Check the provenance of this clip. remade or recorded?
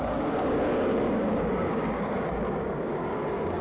remade